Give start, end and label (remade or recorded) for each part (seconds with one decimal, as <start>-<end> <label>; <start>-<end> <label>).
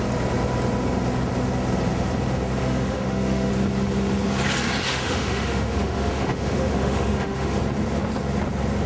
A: 0.0-2.6 recorded; 2.6-3.5 remade; 3.5-4.9 recorded; 4.9-7.6 remade; 7.6-8.9 recorded